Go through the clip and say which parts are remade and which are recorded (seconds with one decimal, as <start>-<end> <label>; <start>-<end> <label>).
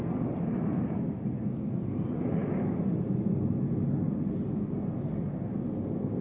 0.0-6.2 recorded